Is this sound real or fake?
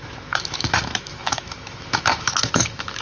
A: fake